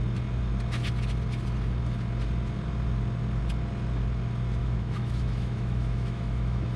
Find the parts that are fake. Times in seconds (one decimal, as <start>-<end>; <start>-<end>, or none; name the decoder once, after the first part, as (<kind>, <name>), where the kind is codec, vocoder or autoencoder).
4.6-6.8 (autoencoder, DAC-VAE)